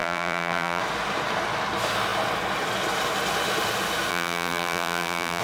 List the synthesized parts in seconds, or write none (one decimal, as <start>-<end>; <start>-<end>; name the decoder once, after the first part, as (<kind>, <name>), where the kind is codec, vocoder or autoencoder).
0.0-0.8 (vocoder, BigVGAN v2); 4.1-5.4